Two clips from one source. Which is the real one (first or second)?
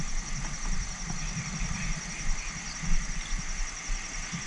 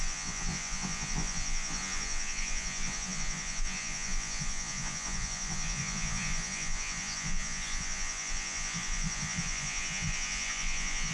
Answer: first